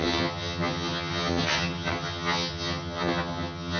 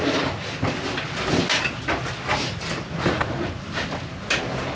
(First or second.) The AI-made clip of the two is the first